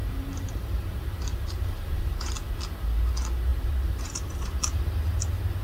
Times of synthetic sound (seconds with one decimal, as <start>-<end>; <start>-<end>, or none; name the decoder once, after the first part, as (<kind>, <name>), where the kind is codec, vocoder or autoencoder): 0.0-2.3 (vocoder, BigVGAN v2); 3.5-4.8